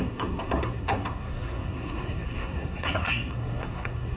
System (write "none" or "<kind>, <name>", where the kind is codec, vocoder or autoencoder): codec, SNAC